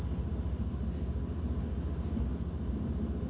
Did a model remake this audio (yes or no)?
no